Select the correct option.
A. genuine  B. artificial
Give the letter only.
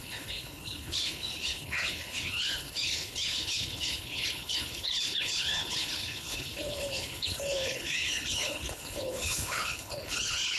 B